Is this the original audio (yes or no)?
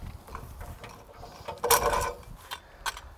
yes